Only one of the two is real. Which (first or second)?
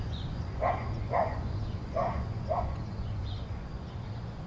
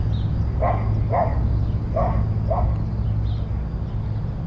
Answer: second